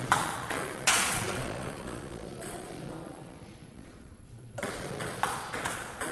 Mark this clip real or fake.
fake